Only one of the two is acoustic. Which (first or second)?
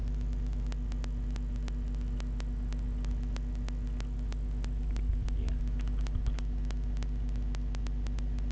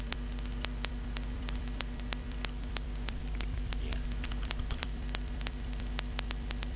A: first